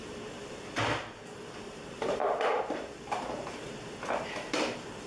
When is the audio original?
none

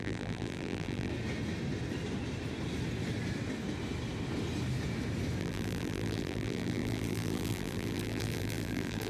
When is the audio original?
1.1-5.4